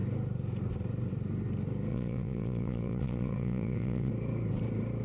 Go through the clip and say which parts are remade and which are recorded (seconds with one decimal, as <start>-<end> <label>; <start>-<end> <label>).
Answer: 0.0-1.9 recorded; 1.9-4.1 remade; 4.1-5.0 recorded